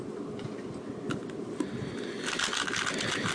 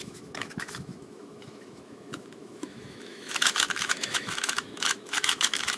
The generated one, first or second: second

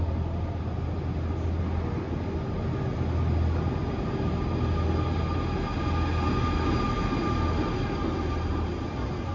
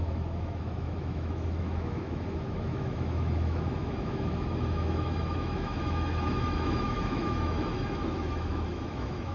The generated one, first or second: second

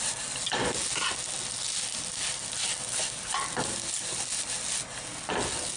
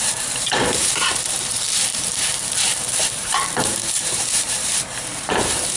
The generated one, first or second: second